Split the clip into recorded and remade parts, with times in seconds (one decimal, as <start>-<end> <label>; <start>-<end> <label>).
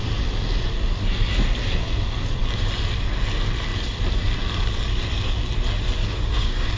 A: 0.0-6.0 recorded; 6.0-6.8 remade